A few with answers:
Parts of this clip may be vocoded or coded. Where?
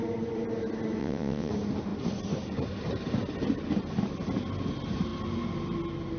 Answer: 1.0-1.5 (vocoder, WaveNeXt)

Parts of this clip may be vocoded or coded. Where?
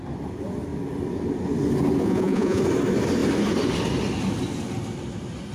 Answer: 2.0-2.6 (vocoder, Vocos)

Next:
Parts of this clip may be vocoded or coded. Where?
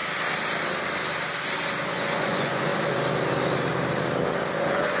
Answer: 1.9-2.7 (vocoder, Vocos); 4.6-5.0